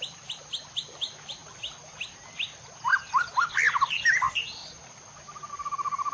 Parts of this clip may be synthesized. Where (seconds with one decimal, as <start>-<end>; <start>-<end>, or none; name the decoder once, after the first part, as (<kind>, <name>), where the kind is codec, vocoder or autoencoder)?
none